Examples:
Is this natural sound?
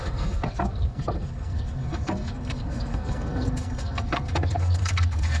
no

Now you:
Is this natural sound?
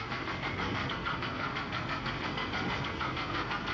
no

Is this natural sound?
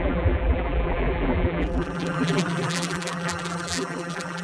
no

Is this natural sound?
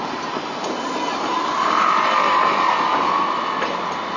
yes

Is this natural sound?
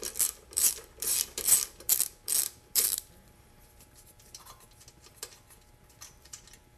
no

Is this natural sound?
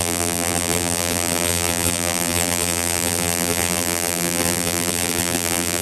no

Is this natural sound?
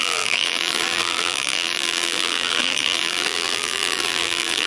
no